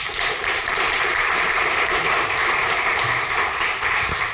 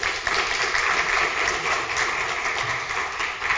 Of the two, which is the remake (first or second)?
first